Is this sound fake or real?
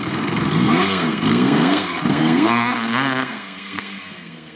fake